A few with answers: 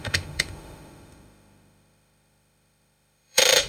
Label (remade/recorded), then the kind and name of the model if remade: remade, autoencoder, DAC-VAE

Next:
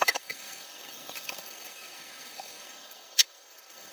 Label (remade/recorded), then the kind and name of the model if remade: remade, codec, SNAC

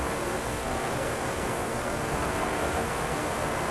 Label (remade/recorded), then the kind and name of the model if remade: remade, codec, SNAC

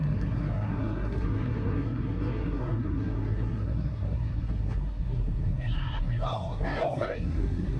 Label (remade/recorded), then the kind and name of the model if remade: remade, codec, SNAC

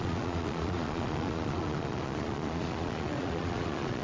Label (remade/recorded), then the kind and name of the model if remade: remade, vocoder, Vocos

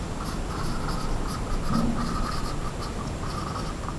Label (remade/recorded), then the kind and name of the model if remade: recorded